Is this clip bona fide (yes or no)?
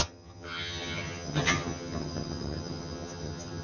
no